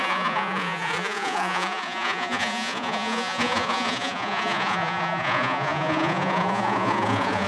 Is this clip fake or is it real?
fake